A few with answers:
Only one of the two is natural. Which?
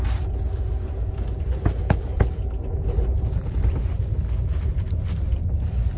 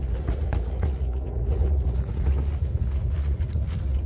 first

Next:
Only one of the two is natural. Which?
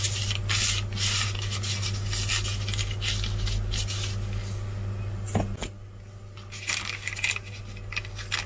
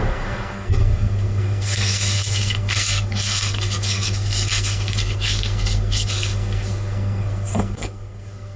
first